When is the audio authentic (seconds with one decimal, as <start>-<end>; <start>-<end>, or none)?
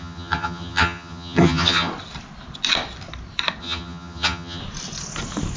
1.9-3.6; 4.6-5.6